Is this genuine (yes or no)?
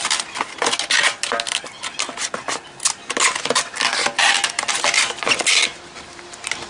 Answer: yes